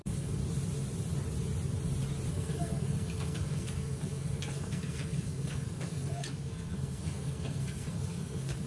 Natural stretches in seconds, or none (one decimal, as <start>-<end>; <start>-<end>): 0.4-2.3